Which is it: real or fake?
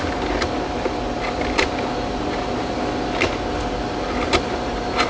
real